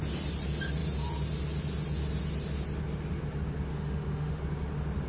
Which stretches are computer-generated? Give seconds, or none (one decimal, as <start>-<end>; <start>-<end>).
3.7-4.4